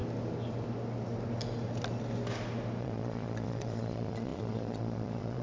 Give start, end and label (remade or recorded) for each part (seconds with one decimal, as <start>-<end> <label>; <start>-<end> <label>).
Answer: 0.0-2.8 recorded; 2.8-5.4 remade